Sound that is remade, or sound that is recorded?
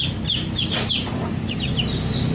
recorded